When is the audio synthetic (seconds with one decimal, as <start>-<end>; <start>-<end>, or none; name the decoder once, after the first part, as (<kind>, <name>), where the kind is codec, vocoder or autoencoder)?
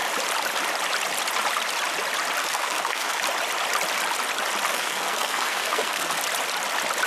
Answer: 2.4-3.2 (codec, SNAC); 4.7-6.2